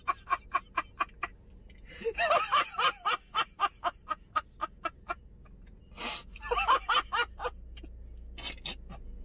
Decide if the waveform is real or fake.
real